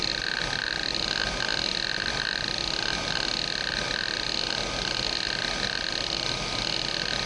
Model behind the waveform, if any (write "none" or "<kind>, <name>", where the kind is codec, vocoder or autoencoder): none